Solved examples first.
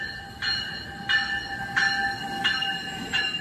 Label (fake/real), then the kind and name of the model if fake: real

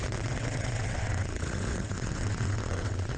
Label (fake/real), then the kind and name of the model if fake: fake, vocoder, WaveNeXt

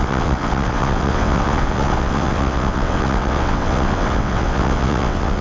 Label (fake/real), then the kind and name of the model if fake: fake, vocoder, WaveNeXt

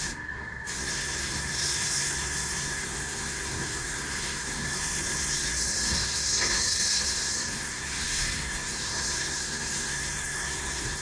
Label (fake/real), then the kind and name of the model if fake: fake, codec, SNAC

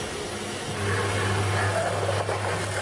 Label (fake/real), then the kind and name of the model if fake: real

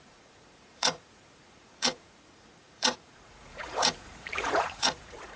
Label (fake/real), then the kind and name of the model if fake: fake, vocoder, Vocos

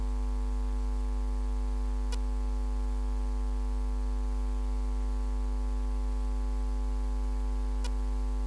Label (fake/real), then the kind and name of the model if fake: real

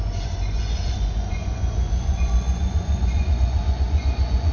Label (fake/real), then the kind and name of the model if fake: fake, vocoder, Vocos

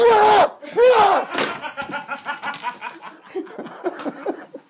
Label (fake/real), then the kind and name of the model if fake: real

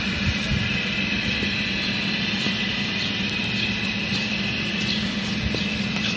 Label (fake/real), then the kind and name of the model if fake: real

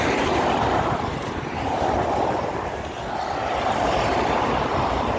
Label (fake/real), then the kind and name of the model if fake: real